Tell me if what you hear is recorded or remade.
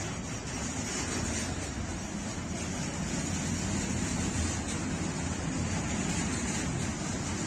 recorded